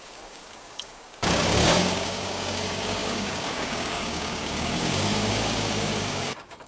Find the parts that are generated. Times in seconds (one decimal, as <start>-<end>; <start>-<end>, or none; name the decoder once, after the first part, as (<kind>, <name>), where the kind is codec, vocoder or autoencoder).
0.0-6.7 (codec, DAC)